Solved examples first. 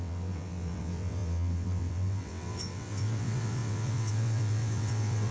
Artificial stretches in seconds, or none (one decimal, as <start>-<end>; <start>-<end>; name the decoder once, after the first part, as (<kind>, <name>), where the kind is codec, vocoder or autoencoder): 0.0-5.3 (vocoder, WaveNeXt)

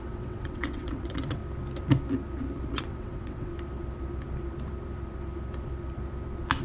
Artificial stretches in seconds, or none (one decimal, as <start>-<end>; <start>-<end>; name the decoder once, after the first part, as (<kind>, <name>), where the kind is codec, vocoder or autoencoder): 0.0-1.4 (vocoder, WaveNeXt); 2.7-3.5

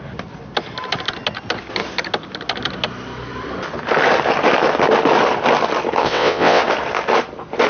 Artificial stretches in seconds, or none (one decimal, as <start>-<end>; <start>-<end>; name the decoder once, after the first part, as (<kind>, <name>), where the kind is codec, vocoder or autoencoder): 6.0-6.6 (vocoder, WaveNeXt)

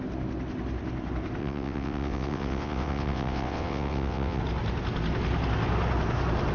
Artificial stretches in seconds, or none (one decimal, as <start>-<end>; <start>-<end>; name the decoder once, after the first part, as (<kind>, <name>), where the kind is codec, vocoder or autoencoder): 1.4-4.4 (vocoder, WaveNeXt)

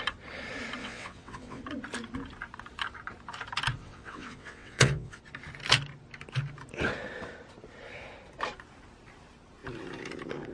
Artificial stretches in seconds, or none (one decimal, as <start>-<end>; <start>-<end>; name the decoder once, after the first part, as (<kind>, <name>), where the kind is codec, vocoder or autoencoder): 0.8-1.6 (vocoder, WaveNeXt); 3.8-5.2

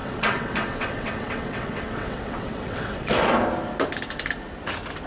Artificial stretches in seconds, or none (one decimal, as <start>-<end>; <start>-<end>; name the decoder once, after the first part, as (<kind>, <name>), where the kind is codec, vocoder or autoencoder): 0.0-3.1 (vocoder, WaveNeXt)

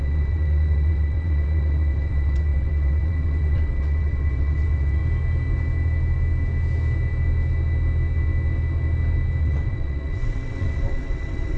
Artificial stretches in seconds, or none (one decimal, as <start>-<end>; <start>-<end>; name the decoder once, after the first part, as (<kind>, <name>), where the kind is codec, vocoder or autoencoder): 0.0-5.0 (vocoder, WaveNeXt); 9.4-11.6